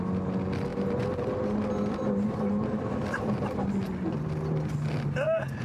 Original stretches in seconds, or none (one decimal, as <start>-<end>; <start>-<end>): 0.0-0.7; 3.7-5.6